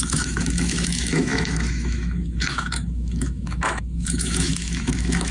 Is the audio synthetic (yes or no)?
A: yes